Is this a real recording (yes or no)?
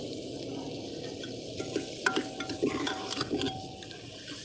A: yes